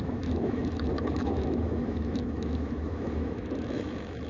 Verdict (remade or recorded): remade